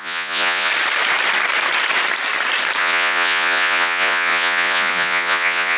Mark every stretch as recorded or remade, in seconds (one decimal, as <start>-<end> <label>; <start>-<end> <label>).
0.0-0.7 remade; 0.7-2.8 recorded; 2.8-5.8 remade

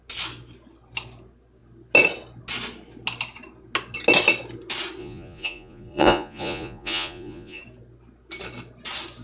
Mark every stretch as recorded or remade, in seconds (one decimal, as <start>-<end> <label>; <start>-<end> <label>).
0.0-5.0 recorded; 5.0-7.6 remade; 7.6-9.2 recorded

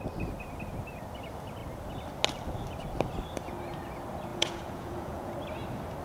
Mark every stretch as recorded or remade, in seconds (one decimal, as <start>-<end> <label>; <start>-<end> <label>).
0.0-4.3 recorded; 4.3-5.3 remade; 5.3-6.0 recorded

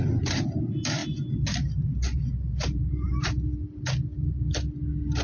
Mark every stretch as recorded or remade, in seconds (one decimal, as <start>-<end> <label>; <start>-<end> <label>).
0.0-5.2 recorded

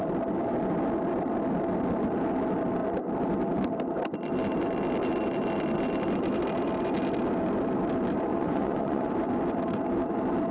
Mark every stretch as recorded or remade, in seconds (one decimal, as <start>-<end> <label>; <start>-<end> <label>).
0.0-8.3 recorded; 8.3-9.1 remade; 9.1-10.5 recorded